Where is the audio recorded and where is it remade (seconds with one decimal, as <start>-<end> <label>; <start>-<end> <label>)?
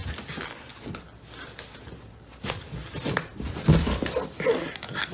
0.0-5.1 recorded